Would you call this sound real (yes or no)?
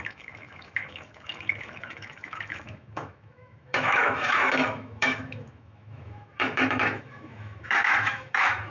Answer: no